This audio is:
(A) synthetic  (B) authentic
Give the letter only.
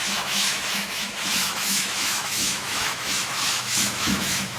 A